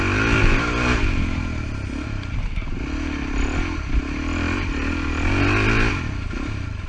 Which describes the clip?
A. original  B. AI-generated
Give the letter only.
A